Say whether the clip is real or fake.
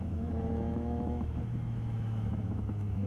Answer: fake